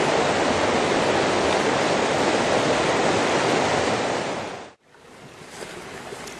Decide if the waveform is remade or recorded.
recorded